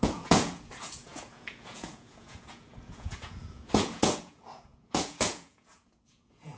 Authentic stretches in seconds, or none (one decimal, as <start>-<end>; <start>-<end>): none